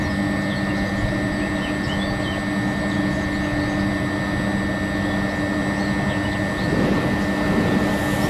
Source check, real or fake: real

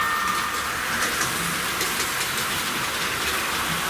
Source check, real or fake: real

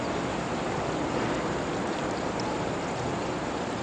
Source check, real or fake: real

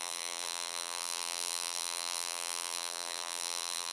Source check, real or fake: fake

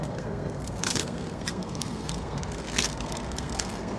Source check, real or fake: fake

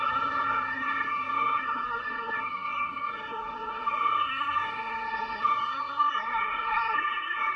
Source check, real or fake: fake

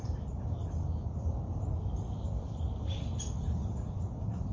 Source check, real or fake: fake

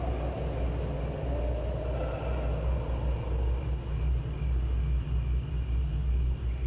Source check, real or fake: real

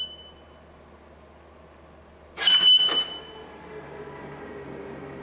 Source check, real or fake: real